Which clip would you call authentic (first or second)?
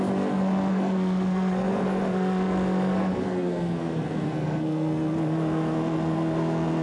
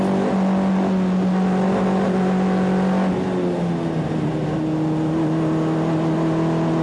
second